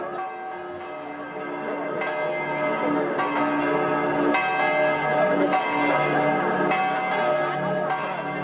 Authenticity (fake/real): real